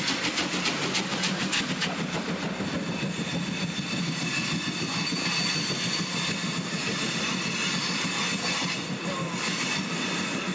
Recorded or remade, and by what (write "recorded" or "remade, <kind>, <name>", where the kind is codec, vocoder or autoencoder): recorded